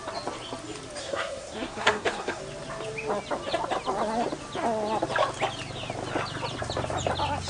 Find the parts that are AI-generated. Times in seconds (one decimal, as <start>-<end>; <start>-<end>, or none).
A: 1.0-2.4